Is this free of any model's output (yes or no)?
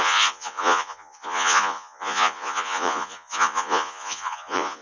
no